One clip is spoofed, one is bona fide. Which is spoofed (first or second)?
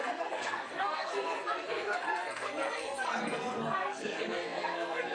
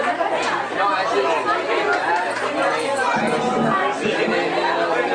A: first